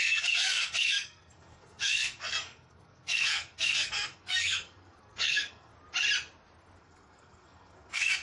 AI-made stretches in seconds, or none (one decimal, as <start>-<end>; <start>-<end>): 0.0-5.7; 6.8-8.2